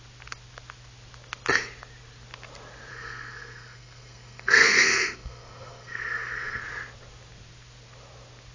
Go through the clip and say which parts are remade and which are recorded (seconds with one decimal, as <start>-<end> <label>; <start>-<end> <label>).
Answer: 0.0-2.9 recorded; 2.9-6.6 remade; 6.6-8.5 recorded